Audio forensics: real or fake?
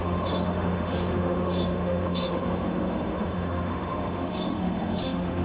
fake